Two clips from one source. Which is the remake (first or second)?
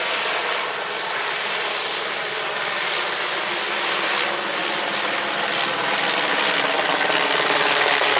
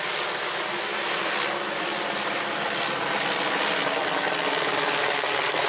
first